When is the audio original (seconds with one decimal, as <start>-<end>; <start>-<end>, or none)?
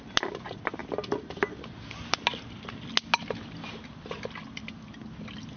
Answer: 0.0-0.8; 2.9-5.6